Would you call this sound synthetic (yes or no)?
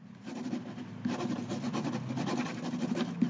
no